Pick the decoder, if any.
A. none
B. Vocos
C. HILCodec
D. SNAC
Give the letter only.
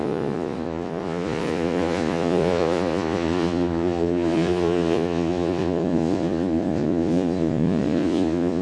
B